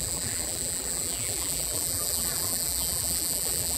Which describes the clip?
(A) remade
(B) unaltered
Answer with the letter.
A